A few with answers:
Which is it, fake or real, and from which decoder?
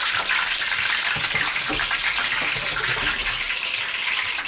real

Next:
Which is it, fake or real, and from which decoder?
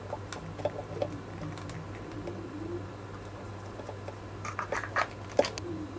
real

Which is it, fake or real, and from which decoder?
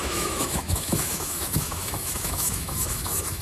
fake, autoencoder, DAC-VAE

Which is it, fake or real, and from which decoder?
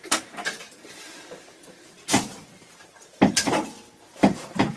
fake, vocoder, BigVGAN v2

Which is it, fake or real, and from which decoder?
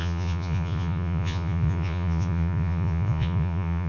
fake, vocoder, Vocos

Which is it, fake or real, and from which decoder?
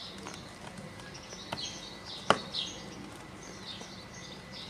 real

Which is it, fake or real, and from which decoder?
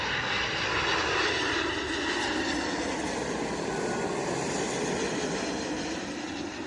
real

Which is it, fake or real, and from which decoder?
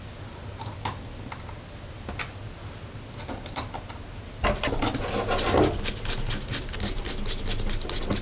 real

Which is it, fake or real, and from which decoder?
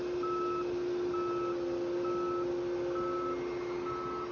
real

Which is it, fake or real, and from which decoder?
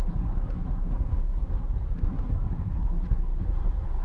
fake, codec, SNAC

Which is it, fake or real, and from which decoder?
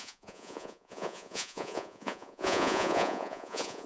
fake, vocoder, Vocos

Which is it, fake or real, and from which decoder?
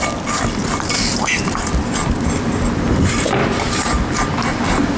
real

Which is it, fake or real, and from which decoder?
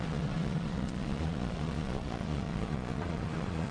fake, vocoder, Vocos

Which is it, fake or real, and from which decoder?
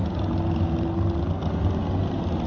real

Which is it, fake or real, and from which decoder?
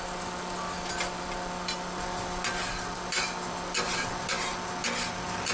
real